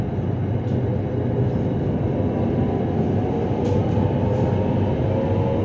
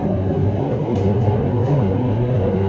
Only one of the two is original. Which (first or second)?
first